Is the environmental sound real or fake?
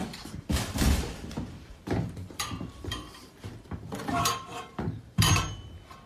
fake